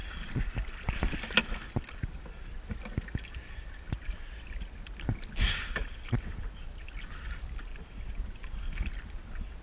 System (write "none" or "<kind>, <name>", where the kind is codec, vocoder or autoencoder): none